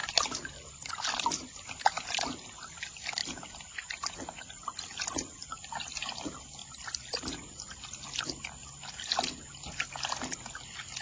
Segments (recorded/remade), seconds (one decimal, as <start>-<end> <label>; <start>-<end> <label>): 0.0-11.0 recorded